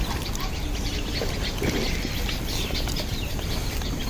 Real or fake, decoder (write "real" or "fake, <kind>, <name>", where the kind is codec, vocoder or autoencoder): real